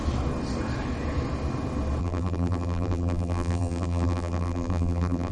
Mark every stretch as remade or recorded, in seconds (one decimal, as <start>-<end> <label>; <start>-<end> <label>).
0.0-2.0 recorded; 2.0-5.3 remade